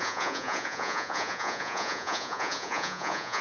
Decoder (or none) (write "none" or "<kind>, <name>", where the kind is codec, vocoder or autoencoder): vocoder, Vocos